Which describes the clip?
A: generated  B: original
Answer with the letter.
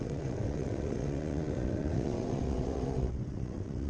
A